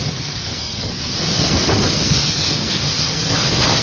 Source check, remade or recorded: remade